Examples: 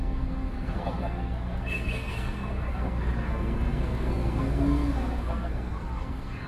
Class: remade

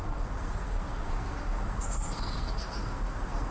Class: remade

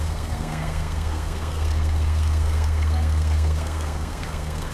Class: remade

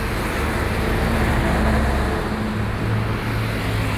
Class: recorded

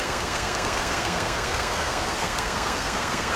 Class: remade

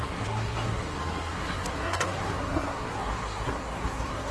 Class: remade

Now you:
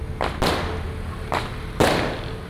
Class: recorded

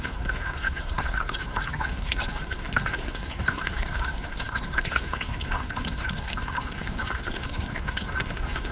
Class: remade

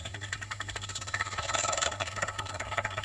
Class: remade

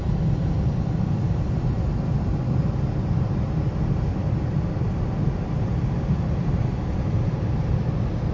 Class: recorded